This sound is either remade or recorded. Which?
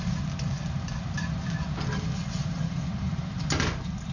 recorded